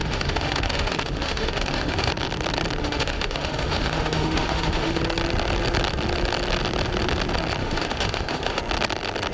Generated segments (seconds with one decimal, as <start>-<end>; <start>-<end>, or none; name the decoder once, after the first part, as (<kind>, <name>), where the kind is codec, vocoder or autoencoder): 0.0-2.1 (autoencoder, DAC-VAE); 2.8-5.0; 7.6-8.6